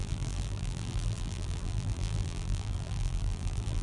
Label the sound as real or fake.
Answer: fake